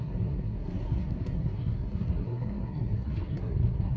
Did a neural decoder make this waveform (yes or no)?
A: yes